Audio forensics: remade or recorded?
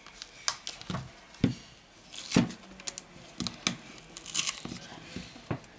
recorded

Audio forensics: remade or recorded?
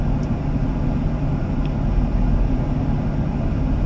recorded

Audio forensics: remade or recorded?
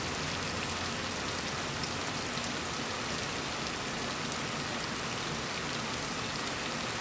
recorded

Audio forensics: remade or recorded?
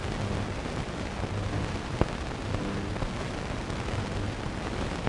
recorded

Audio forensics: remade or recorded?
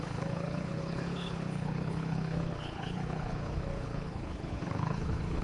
remade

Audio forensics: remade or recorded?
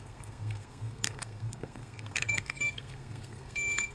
remade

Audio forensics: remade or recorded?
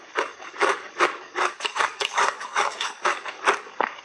remade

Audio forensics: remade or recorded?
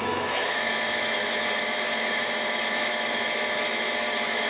remade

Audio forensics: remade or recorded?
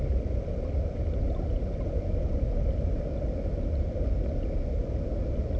recorded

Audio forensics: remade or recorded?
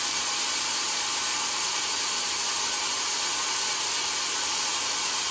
recorded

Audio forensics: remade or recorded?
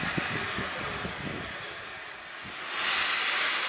recorded